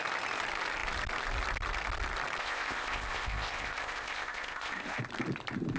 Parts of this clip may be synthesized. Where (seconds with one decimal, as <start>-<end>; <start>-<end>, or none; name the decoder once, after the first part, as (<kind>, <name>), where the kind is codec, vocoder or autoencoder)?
2.4-5.0 (codec, ZipCodec)